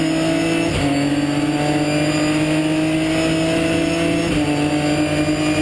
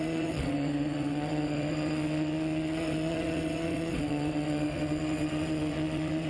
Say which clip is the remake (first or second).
second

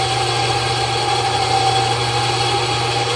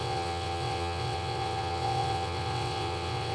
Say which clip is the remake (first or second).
second